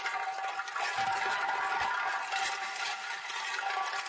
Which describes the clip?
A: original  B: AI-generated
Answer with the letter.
A